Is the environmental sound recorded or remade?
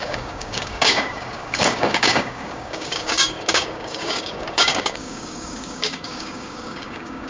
remade